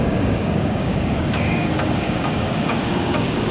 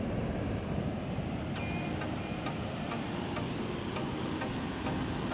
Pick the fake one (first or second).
first